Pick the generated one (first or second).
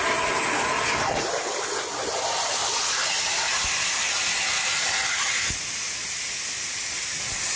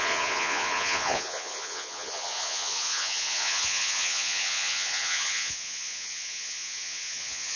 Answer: second